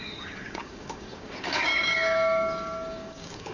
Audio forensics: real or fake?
fake